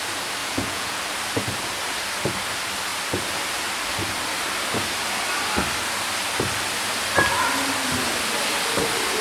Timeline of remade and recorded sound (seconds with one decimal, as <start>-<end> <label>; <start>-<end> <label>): 0.0-0.4 recorded; 0.4-1.0 remade; 1.0-9.2 recorded